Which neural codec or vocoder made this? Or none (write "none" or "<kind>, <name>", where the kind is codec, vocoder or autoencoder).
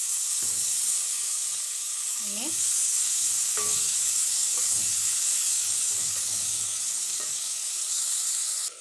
codec, DAC